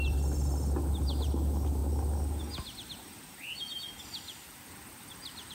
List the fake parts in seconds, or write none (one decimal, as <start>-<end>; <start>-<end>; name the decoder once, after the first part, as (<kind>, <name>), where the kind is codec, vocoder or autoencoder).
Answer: none